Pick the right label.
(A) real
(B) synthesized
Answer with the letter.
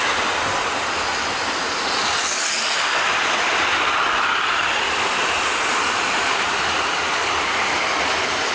A